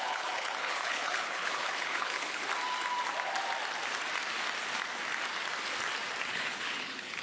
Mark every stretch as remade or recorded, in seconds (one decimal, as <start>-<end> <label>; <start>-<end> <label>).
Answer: 0.0-2.4 remade; 2.4-6.3 recorded; 6.3-7.2 remade